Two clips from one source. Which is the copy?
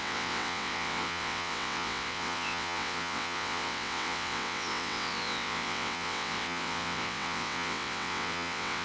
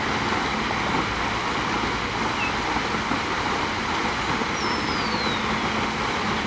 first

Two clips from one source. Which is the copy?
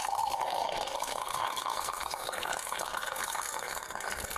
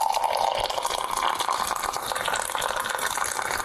first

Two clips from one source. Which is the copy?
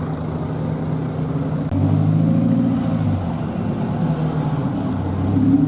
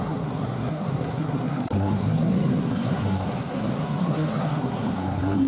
second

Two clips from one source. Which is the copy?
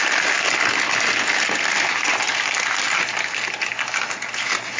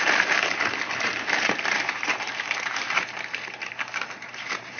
second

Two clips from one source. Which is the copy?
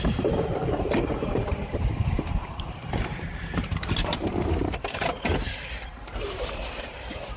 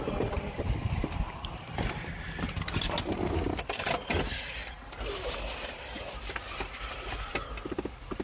first